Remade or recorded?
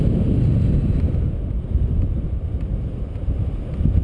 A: recorded